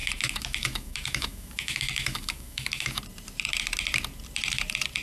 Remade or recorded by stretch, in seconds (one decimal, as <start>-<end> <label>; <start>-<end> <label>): 0.0-3.0 remade; 3.0-5.0 recorded